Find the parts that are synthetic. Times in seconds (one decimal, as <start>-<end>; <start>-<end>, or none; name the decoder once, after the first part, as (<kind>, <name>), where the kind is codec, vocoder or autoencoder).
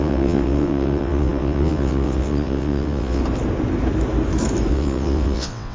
0.0-3.2 (vocoder, WaveNeXt); 4.7-5.7